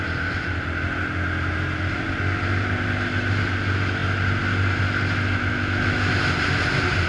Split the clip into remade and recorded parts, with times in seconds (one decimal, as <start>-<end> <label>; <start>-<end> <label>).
0.0-5.5 recorded; 5.5-6.1 remade; 6.1-7.1 recorded